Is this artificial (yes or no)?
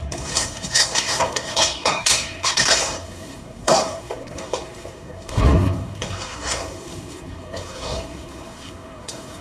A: yes